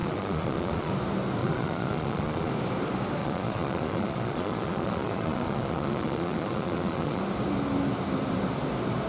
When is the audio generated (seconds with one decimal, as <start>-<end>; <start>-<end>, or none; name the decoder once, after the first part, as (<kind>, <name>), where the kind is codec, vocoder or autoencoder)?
0.0-0.9 (vocoder, Vocos); 1.4-2.5; 3.2-7.2